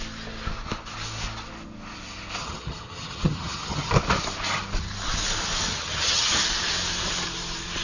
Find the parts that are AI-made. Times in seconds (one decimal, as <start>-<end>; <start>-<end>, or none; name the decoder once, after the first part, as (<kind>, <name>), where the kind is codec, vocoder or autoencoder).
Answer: 2.4-3.9 (vocoder, HiFi-GAN); 5.7-6.3